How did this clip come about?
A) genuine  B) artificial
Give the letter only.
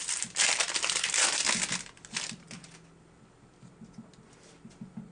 A